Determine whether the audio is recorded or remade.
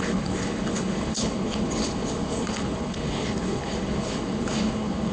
remade